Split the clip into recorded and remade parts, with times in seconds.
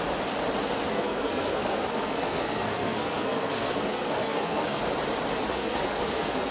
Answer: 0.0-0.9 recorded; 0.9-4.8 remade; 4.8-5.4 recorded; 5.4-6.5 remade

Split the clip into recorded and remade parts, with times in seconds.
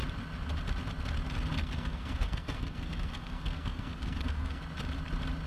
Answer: 0.0-1.6 recorded; 1.6-4.6 remade; 4.6-5.5 recorded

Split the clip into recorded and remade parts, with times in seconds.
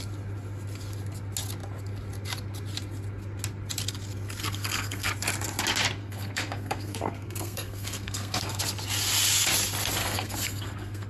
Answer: 0.0-4.4 recorded; 4.4-5.1 remade; 5.1-6.0 recorded; 6.0-8.6 remade; 8.6-10.0 recorded; 10.0-11.1 remade